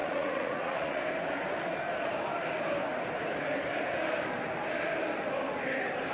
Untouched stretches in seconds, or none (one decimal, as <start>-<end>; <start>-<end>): 1.0-6.1